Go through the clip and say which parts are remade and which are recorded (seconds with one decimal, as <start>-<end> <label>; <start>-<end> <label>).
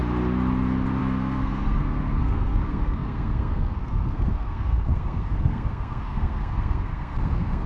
0.0-1.0 recorded; 1.0-7.7 remade